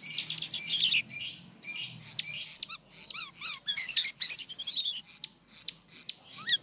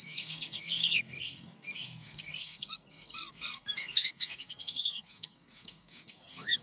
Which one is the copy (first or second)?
second